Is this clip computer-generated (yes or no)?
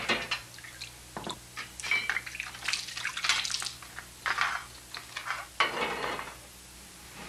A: no